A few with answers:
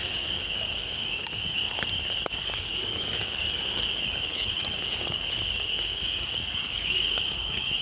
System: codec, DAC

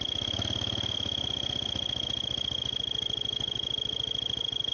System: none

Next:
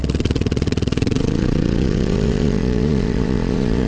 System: vocoder, Vocos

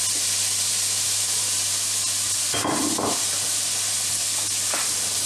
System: none